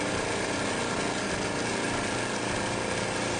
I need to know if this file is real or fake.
real